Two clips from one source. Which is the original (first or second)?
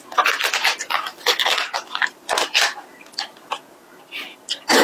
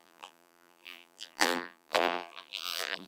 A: first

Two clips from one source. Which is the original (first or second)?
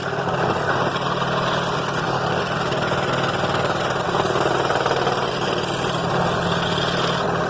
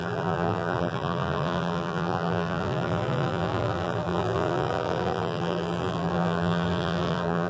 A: first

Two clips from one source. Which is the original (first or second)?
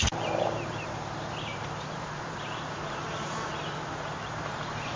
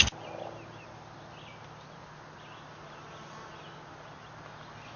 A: second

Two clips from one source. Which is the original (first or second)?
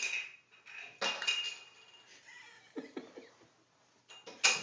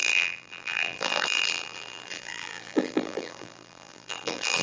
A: first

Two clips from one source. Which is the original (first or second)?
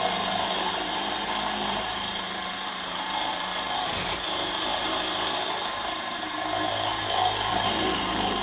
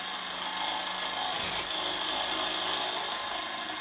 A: second